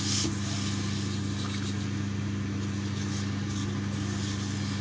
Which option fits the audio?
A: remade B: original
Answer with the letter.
B